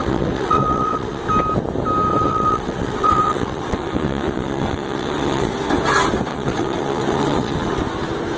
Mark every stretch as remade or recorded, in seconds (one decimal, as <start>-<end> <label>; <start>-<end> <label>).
0.0-1.2 remade; 1.2-2.1 recorded; 2.1-5.5 remade; 5.5-6.3 recorded; 6.3-7.8 remade; 7.8-8.4 recorded